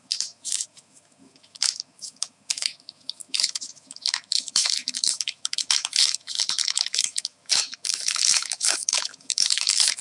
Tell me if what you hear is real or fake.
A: fake